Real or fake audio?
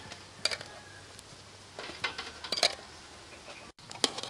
real